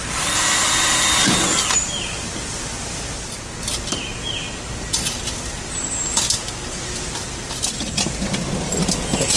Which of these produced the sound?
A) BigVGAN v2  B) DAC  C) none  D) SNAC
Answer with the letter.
C